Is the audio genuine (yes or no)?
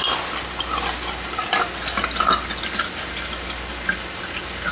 yes